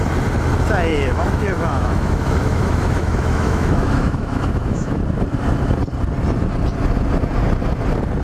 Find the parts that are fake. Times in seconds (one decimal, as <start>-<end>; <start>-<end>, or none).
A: 0.9-5.0